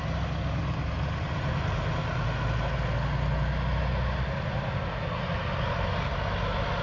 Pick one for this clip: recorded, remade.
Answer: recorded